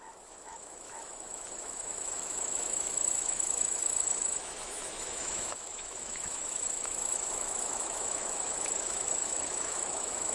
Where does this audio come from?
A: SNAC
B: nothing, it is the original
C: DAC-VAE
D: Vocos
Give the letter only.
C